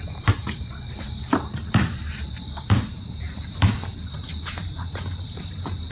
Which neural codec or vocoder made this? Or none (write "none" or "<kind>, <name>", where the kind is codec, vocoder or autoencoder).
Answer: vocoder, BigVGAN v2